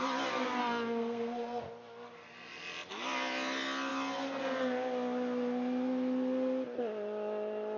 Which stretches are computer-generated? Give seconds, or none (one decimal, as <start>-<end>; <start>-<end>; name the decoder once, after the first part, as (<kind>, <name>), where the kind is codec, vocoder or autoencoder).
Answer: 0.6-1.6 (codec, SNAC)